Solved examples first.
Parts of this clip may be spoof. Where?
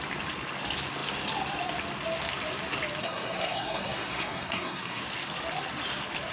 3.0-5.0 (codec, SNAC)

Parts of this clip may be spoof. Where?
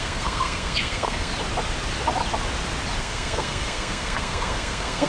0.0-1.3 (codec, SNAC); 3.0-5.1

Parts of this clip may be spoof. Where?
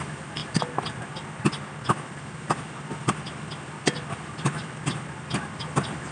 none